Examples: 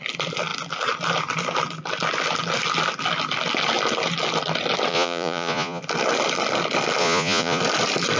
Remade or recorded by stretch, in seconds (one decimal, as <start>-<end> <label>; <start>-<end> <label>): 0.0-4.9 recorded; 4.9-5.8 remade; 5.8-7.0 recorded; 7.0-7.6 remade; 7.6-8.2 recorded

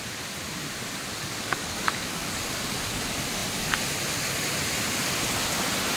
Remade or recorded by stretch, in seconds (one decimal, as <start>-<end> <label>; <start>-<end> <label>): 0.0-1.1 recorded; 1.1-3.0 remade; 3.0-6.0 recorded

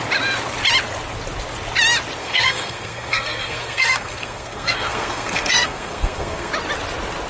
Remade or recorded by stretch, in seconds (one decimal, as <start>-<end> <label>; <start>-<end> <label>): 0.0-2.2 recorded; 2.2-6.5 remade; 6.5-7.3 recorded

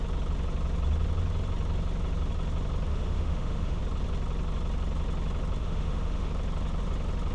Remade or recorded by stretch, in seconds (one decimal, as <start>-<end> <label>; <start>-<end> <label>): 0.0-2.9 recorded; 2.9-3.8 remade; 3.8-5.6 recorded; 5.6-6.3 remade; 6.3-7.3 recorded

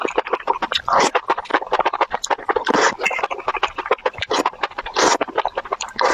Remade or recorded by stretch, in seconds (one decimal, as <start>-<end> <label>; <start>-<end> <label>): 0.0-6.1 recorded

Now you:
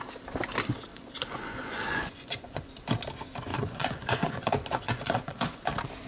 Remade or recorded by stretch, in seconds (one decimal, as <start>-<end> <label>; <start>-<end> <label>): 0.0-0.9 recorded; 0.9-2.7 remade; 2.7-3.5 recorded; 3.5-5.6 remade; 5.6-6.1 recorded